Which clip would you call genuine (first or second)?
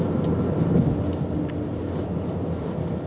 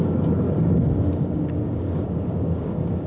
first